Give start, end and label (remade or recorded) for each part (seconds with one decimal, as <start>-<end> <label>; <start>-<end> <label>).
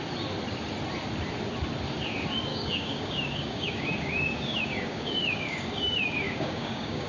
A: 0.0-2.5 recorded; 2.5-7.1 remade